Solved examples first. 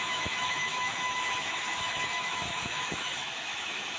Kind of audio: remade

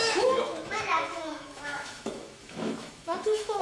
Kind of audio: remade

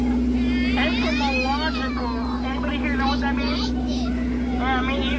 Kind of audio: recorded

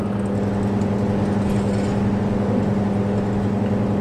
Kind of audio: recorded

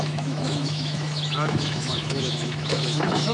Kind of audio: remade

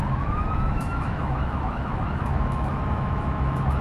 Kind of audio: remade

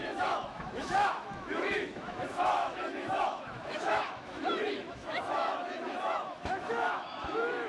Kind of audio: remade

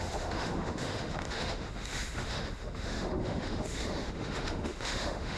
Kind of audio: remade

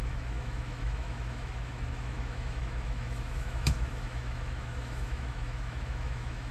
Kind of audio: remade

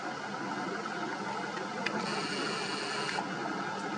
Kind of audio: recorded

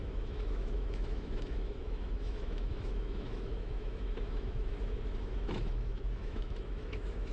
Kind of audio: remade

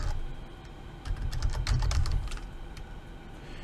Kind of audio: recorded